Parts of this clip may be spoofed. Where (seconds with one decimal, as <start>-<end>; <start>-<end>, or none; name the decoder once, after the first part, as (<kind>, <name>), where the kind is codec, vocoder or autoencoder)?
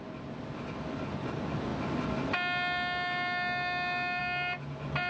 none